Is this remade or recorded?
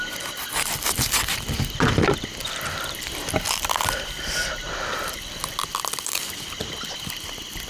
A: recorded